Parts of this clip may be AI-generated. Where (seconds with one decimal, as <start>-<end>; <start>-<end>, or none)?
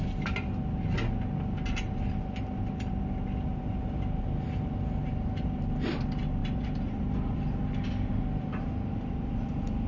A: 6.4-7.0